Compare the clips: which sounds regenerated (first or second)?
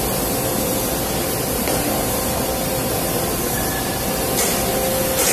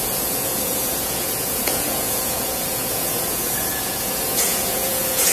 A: second